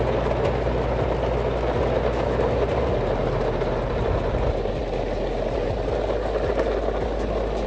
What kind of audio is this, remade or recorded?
recorded